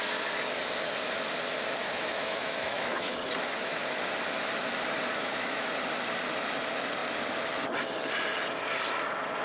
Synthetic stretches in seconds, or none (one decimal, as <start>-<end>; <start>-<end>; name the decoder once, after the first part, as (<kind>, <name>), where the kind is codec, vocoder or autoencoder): 1.8-3.1 (autoencoder, DAC-VAE); 5.1-5.7